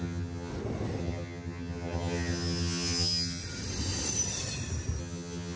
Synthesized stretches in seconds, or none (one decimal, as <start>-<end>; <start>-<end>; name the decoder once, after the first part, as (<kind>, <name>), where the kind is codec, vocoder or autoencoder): 0.0-0.5 (vocoder, HiFi-GAN); 1.0-3.4; 5.0-5.6